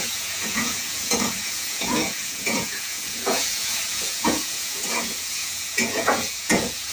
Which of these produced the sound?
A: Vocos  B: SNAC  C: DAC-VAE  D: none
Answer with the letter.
A